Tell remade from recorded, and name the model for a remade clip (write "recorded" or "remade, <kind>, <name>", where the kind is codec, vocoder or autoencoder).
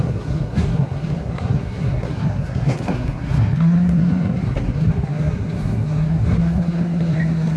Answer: remade, codec, SNAC